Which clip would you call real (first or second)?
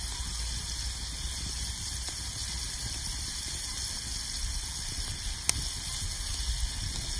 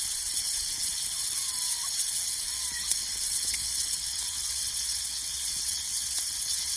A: first